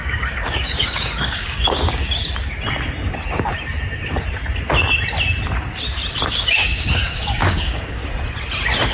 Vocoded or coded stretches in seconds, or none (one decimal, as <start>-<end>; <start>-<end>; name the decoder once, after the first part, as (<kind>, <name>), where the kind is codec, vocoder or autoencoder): 0.0-2.0 (codec, DAC); 6.3-8.0